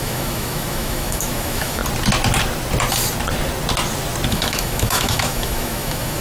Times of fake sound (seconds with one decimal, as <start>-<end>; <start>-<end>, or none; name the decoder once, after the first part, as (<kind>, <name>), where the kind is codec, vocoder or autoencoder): 0.0-1.8 (autoencoder, DAC-VAE); 4.3-6.2